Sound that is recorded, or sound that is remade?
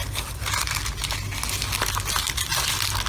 recorded